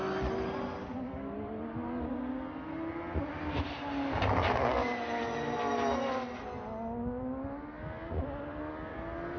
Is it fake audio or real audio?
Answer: real